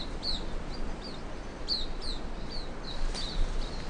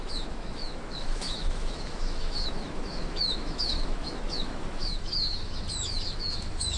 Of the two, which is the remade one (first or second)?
second